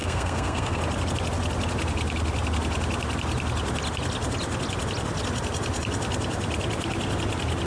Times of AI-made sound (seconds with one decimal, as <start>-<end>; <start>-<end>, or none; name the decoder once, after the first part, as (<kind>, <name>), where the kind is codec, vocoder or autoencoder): 0.0-0.8 (codec, SNAC)